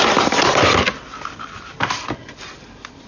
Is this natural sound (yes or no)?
yes